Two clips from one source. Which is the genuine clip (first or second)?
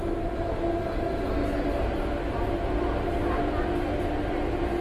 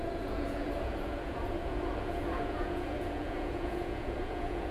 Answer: first